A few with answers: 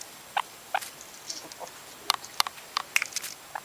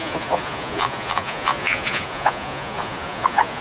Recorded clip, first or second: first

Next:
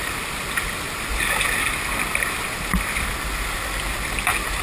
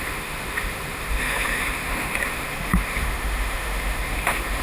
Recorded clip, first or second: first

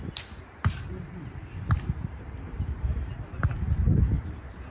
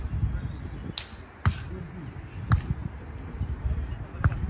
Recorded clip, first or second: second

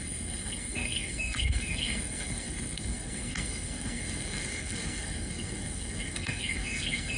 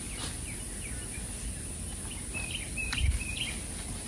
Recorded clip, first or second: second